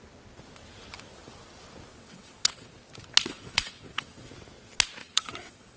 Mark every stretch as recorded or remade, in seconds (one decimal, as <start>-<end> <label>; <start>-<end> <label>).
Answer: 0.0-1.9 recorded; 1.9-2.7 remade; 2.7-3.2 recorded; 3.2-4.3 remade; 4.3-5.0 recorded; 5.0-5.8 remade